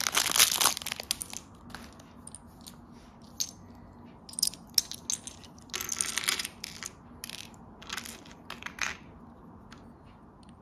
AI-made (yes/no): no